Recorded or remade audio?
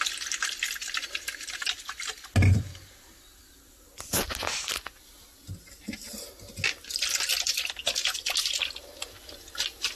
recorded